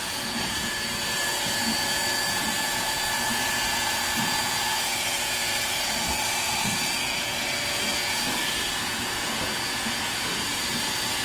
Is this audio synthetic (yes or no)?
yes